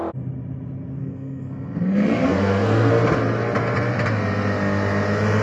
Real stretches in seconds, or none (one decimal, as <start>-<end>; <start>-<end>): 0.0-1.0; 2.9-5.4

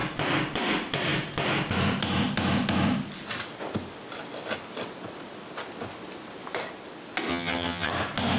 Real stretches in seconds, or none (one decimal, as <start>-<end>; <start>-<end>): 0.0-7.3; 7.9-8.4

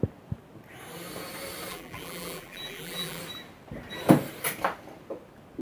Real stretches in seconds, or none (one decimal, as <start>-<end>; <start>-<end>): 0.0-1.7; 3.2-5.6